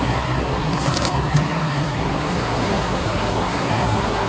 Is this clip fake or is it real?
fake